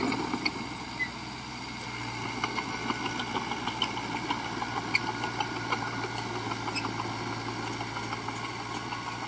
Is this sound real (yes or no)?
yes